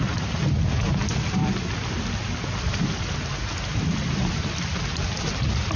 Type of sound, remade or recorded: recorded